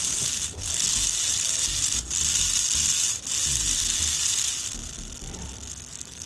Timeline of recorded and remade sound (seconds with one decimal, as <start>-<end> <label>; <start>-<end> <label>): 0.0-5.7 recorded; 5.7-6.3 remade